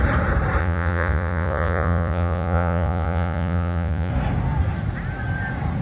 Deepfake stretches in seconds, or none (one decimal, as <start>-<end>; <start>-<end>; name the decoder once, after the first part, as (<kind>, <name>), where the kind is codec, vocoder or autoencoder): 0.6-4.1 (vocoder, Vocos)